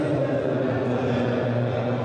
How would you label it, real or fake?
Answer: fake